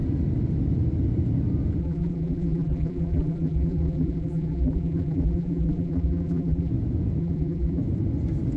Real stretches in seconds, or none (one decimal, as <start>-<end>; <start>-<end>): 0.0-1.8; 6.7-7.2; 7.8-8.6